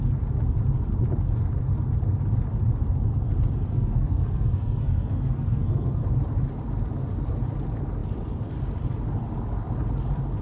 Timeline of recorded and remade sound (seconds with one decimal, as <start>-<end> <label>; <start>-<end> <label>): 0.0-3.7 recorded; 3.7-6.0 remade; 6.0-10.4 recorded